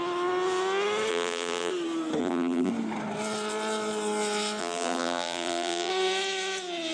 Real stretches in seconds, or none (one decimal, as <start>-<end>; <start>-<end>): 0.0-1.1; 1.7-2.2; 2.7-4.6; 5.9-6.9